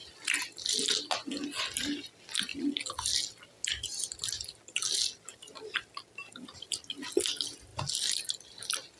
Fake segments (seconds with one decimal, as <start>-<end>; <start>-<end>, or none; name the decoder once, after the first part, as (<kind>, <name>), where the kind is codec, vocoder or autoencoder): none